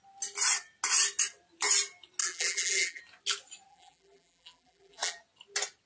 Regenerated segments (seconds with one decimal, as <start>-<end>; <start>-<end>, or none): 2.2-3.0; 3.7-5.2